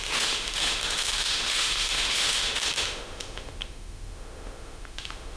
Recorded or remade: remade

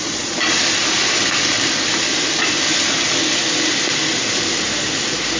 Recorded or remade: remade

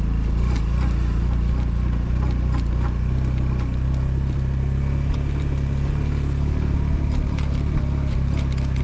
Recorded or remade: recorded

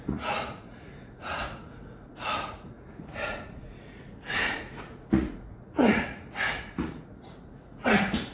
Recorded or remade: remade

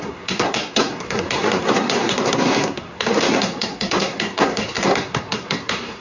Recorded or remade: remade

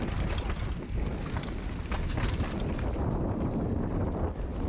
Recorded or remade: recorded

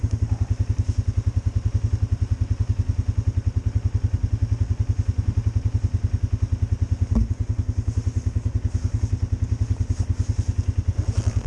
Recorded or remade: recorded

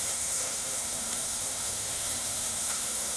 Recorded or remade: remade